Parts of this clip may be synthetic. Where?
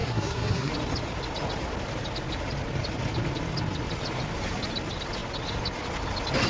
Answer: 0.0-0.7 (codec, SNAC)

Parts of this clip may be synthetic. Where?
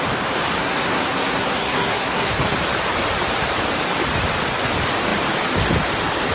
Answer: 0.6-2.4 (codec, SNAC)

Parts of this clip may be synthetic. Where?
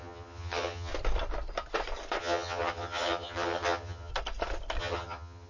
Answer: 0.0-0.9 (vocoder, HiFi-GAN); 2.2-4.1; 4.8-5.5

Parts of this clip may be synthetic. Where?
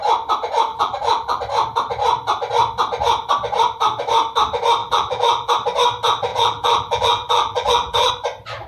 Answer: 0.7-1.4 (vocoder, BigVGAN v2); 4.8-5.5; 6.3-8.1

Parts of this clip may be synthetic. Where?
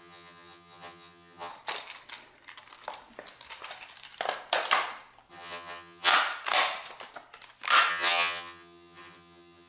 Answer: 0.0-1.5 (vocoder, HiFi-GAN); 5.3-6.1; 7.9-9.7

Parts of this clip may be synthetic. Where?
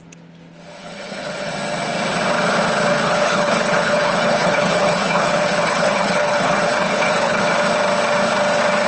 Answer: 0.8-1.5 (codec, HILCodec); 2.9-7.4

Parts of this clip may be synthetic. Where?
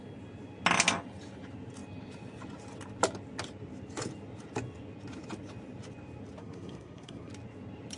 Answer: 6.4-7.3 (codec, SNAC)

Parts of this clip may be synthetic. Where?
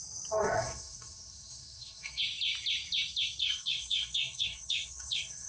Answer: 0.4-2.2 (codec, SNAC); 3.4-5.5